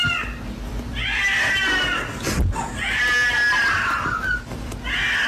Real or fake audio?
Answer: real